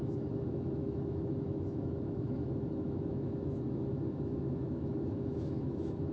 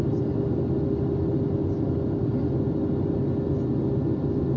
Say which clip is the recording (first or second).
second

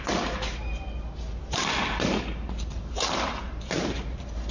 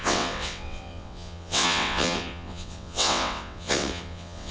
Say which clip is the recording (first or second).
first